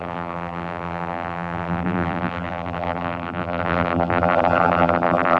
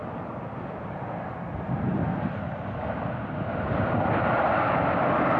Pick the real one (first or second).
second